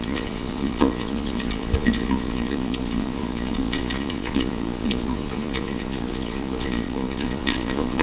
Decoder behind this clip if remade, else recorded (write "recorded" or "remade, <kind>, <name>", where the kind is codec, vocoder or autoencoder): remade, vocoder, Vocos